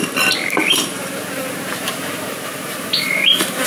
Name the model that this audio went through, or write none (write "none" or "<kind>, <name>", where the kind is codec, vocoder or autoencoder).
vocoder, BigVGAN v2